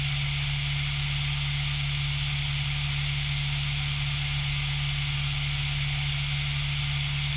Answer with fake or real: real